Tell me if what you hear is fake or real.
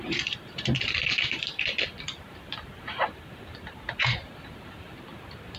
fake